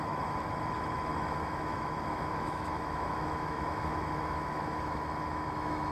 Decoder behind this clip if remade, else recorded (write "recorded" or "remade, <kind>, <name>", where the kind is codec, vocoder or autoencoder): remade, autoencoder, DAC-VAE